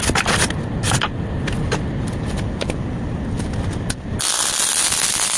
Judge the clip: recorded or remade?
recorded